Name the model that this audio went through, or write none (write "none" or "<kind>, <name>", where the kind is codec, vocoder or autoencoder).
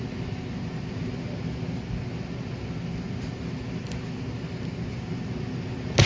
none